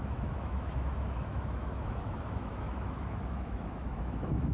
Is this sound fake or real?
fake